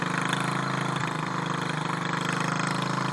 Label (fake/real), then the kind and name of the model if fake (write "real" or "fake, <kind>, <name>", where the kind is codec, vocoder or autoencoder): real